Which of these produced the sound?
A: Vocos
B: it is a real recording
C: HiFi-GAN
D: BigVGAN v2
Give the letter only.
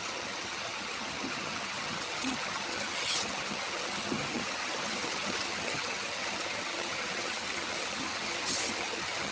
C